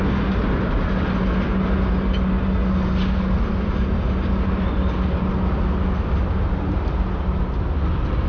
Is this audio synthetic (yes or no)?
no